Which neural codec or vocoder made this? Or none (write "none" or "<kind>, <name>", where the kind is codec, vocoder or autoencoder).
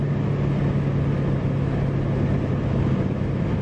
none